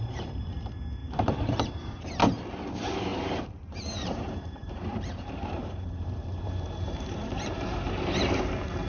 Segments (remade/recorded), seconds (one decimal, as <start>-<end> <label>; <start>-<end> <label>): 0.0-1.0 recorded; 1.0-2.1 remade; 2.1-3.1 recorded; 3.1-8.4 remade; 8.4-8.9 recorded